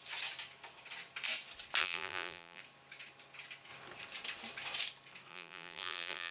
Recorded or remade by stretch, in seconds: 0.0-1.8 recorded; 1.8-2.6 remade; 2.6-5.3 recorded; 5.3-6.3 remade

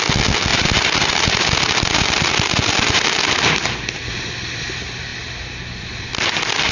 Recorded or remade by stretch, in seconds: 0.0-0.5 recorded; 0.5-4.1 remade; 4.1-6.7 recorded

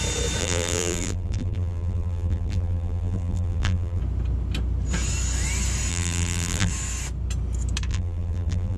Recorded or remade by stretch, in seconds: 0.0-0.4 recorded; 0.4-4.0 remade; 4.0-5.9 recorded; 5.9-6.7 remade; 6.7-7.9 recorded; 7.9-8.8 remade

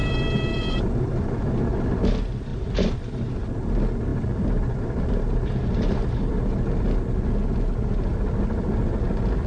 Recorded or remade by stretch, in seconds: 0.0-1.5 remade; 1.5-2.5 recorded; 2.5-3.3 remade; 3.3-4.1 recorded; 4.1-7.2 remade; 7.2-8.1 recorded; 8.1-9.1 remade; 9.1-9.5 recorded

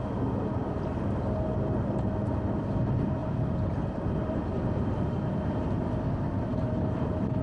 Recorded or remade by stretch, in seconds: 0.0-3.2 recorded; 3.2-5.9 remade; 5.9-6.5 recorded; 6.5-7.4 remade

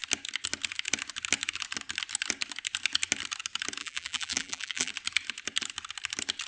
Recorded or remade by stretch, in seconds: 0.0-3.8 recorded; 3.8-4.9 remade; 4.9-6.5 recorded

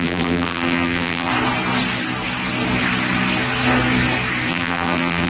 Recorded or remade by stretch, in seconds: 0.0-1.3 remade; 1.3-4.5 recorded; 4.5-5.3 remade